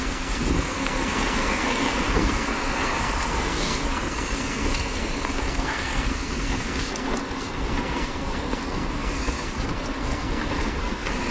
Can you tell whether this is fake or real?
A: fake